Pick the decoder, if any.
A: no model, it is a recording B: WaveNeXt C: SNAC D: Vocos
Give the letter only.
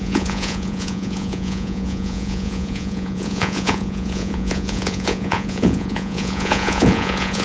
D